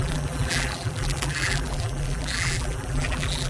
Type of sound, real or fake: fake